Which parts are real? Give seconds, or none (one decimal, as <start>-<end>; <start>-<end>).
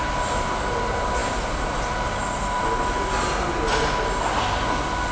0.0-5.1